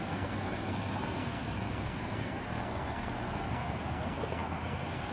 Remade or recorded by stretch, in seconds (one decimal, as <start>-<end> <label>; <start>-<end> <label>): 0.0-5.1 remade